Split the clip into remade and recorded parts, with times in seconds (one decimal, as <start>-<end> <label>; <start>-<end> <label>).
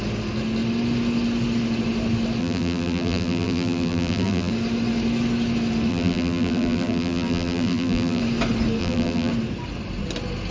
0.0-2.4 recorded; 2.4-4.5 remade; 4.5-5.9 recorded; 5.9-8.2 remade; 8.2-8.8 recorded; 8.8-9.3 remade; 9.3-10.5 recorded